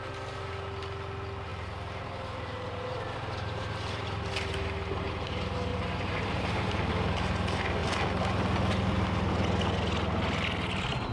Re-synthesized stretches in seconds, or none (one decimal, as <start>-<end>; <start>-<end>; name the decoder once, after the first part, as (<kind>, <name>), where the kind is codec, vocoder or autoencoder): 1.5-4.2 (vocoder, BigVGAN v2); 5.7-6.9